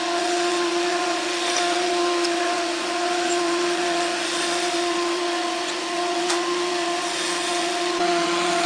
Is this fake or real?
fake